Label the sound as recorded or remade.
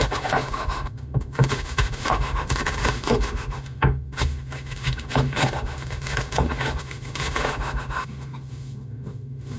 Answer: remade